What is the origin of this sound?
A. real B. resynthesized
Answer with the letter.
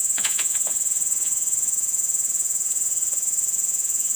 B